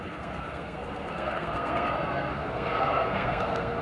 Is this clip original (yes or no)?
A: no